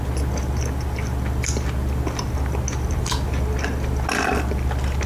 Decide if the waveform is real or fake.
real